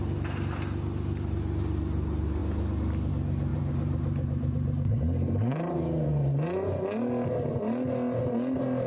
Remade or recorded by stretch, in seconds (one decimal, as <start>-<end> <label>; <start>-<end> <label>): 0.0-3.5 recorded; 3.5-6.1 remade; 6.1-8.9 recorded